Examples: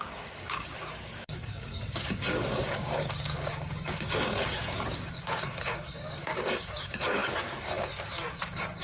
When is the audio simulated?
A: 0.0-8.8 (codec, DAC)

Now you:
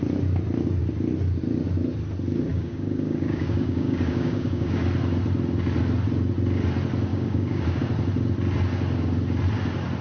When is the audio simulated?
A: 2.5-4.8 (codec, DAC); 7.1-7.8